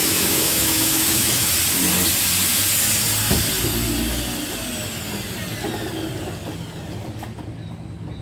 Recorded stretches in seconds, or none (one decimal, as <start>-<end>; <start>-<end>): 1.5-8.2